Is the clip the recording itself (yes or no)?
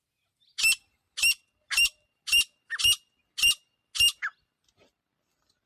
yes